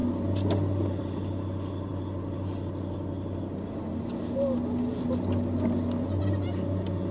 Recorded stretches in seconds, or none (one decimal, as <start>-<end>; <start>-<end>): 0.0-7.1